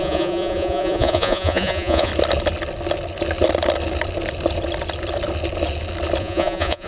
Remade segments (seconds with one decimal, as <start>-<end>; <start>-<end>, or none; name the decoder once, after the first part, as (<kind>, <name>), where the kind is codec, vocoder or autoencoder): 0.0-2.1 (vocoder, Vocos); 6.2-6.9

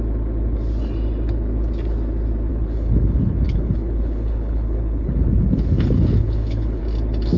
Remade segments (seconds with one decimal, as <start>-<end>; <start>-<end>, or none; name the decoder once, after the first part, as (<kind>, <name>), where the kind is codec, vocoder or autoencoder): 2.5-6.8 (codec, HILCodec)

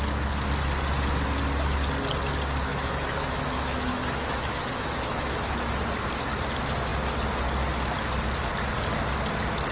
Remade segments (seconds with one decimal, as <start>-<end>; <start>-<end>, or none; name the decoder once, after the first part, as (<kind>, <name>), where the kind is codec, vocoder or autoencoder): 2.7-5.8 (autoencoder, DAC-VAE)

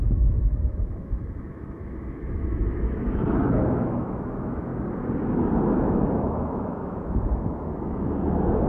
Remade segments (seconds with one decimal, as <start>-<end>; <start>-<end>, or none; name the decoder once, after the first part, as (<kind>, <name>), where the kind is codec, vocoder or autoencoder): 0.0-4.7 (autoencoder, DAC-VAE); 5.8-8.7

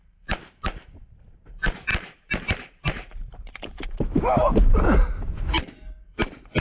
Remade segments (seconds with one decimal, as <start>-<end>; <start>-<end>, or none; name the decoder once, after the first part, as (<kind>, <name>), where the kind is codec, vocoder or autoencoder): 0.0-6.6 (vocoder, BigVGAN v2)

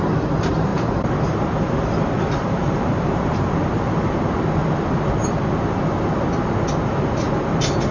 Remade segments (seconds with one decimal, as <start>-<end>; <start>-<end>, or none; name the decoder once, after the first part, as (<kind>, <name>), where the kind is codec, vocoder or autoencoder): 0.7-4.4 (vocoder, BigVGAN v2)

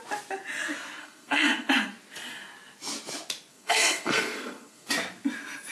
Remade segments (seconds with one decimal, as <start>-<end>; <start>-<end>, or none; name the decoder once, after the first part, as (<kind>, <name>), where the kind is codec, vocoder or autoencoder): 1.0-1.7 (codec, SNAC); 3.5-4.9